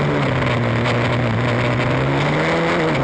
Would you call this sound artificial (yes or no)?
no